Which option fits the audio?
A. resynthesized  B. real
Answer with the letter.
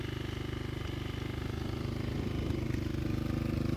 B